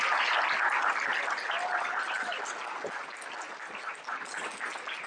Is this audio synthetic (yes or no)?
no